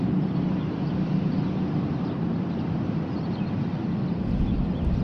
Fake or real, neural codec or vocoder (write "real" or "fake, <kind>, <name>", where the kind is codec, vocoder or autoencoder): fake, vocoder, BigVGAN v2